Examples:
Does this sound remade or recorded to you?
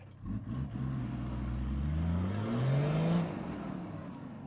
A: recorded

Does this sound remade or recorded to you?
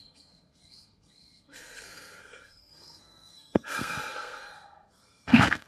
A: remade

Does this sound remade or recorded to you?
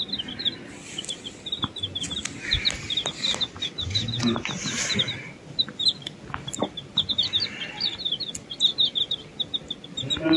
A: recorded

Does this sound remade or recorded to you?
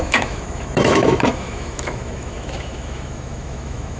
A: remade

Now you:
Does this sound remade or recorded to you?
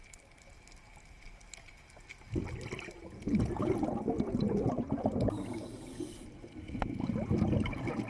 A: recorded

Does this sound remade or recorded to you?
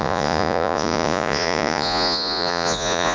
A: remade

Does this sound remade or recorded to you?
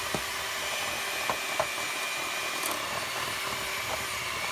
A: recorded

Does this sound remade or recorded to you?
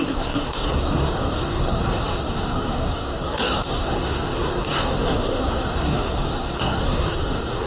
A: remade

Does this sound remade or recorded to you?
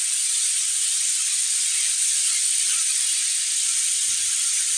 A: recorded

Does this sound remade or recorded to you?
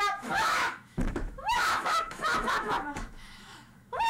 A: remade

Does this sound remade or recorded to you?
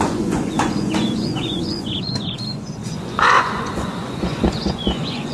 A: remade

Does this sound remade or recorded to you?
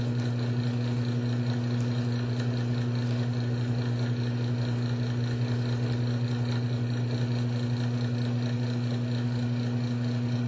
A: recorded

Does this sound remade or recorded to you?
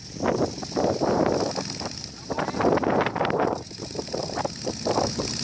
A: recorded